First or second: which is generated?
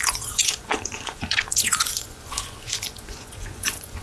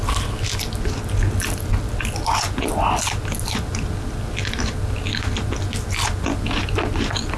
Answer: first